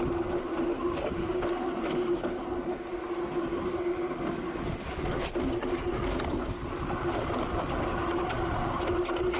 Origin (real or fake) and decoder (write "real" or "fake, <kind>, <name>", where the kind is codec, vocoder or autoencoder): real